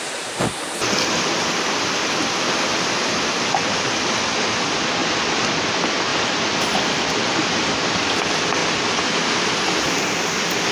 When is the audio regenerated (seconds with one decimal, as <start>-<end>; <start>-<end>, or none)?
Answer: 6.1-8.2; 8.6-9.3